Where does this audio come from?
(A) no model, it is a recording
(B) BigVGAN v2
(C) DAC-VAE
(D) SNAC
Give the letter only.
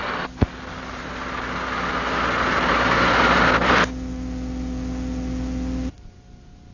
A